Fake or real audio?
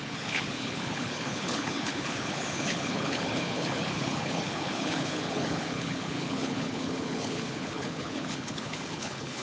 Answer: fake